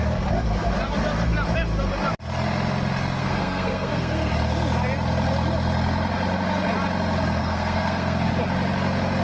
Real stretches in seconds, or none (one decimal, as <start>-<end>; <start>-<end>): 0.0-3.2; 4.3-7.4; 8.3-9.2